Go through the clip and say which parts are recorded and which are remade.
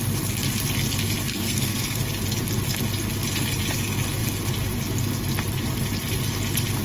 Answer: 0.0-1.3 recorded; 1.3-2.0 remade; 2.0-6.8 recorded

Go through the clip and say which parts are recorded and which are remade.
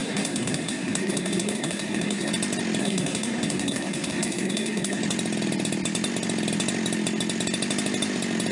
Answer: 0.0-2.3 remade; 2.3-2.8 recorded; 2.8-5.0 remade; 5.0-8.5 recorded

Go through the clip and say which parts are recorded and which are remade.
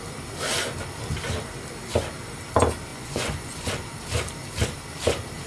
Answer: 0.0-2.9 recorded; 2.9-3.7 remade; 3.7-5.5 recorded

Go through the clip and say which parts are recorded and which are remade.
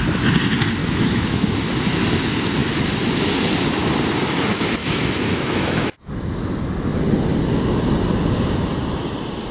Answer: 0.0-0.8 recorded; 0.8-1.5 remade; 1.5-4.8 recorded; 4.8-6.1 remade; 6.1-9.5 recorded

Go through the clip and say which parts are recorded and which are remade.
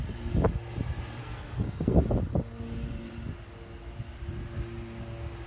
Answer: 0.0-1.2 recorded; 1.2-2.0 remade; 2.0-5.5 recorded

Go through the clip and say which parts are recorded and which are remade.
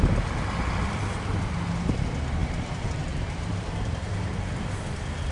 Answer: 0.0-2.4 recorded; 2.4-4.5 remade; 4.5-5.3 recorded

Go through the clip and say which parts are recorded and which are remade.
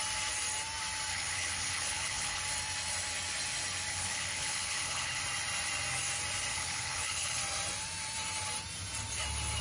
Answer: 0.0-1.1 recorded; 1.1-2.4 remade; 2.4-3.9 recorded; 3.9-5.2 remade; 5.2-6.5 recorded; 6.5-7.4 remade; 7.4-9.6 recorded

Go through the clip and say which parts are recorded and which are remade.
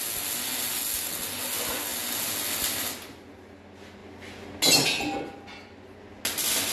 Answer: 0.0-6.7 recorded